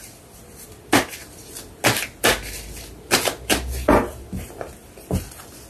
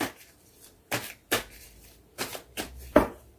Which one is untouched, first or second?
first